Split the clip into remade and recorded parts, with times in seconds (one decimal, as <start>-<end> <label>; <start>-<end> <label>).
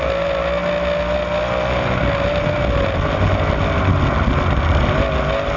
0.0-5.6 recorded